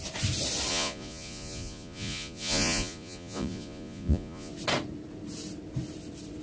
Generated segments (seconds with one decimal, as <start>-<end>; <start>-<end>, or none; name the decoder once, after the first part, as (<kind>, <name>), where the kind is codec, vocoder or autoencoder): 0.7-4.5 (vocoder, Vocos)